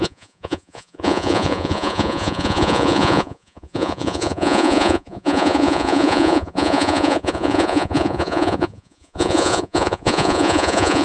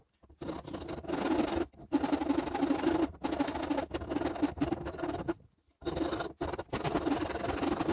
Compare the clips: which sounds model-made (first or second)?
first